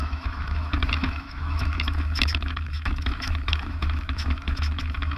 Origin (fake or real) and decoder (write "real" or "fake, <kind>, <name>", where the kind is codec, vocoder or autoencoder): fake, autoencoder, DAC-VAE